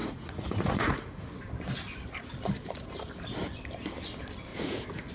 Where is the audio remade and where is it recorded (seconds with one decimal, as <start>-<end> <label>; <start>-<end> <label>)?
0.0-1.3 remade; 1.3-4.5 recorded; 4.5-5.1 remade